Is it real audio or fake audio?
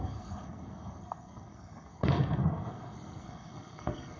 fake